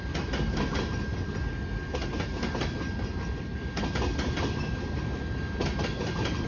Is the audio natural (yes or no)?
yes